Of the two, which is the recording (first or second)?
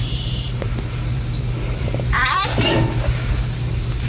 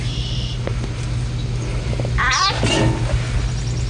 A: second